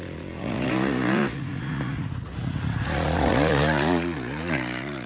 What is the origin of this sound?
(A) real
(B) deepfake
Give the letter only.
B